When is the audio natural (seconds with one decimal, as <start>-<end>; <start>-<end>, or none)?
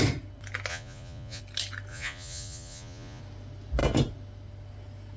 0.0-0.7; 1.4-1.9; 3.2-5.2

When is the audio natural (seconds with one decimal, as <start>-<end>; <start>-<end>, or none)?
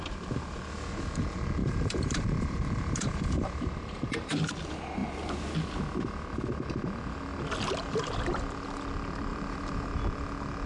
0.0-1.6; 4.5-9.3; 10.0-10.7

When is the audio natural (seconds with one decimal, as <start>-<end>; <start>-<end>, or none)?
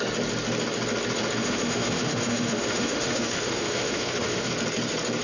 0.0-1.4; 4.5-5.2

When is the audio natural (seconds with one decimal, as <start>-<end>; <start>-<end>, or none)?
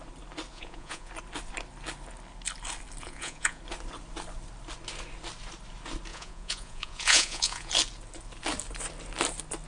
0.0-0.5; 1.1-3.0; 3.6-6.1; 7.7-9.7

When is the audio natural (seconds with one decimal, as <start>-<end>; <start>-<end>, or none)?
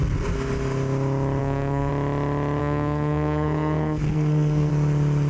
0.0-1.4; 1.9-2.6; 4.7-5.3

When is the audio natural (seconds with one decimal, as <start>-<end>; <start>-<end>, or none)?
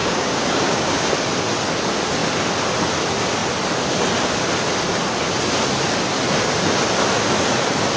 1.1-8.0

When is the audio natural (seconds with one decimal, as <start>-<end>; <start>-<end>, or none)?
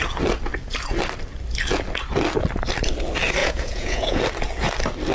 0.0-3.4; 4.2-5.1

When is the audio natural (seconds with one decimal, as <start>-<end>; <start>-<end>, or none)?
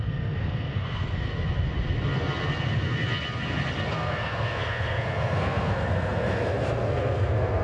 1.3-3.9